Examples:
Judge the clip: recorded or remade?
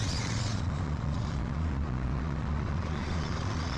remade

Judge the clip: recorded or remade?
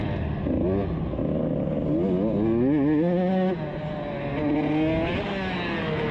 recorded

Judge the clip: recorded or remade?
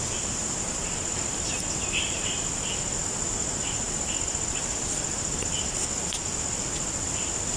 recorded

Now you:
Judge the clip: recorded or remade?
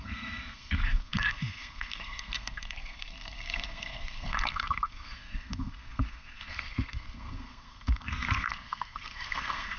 remade